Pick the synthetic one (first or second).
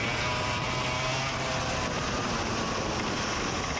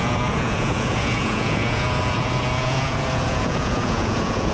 second